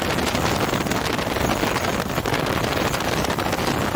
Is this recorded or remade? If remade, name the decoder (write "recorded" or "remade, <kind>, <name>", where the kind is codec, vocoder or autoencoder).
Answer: recorded